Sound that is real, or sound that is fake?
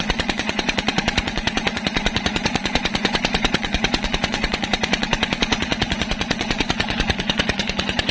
fake